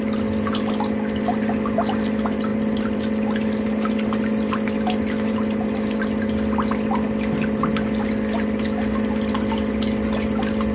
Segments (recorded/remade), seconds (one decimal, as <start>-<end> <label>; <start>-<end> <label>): 0.0-10.7 recorded